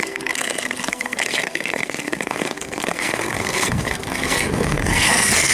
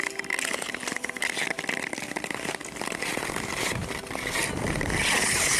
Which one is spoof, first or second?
first